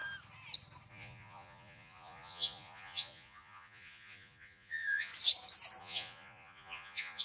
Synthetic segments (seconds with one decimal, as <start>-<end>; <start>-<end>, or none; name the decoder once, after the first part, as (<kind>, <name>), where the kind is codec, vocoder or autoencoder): 0.9-5.1 (vocoder, Vocos); 5.8-7.2